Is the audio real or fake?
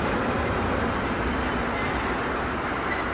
fake